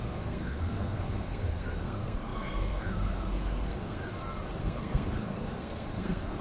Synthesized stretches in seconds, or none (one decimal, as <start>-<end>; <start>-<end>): 0.0-4.0; 4.6-6.4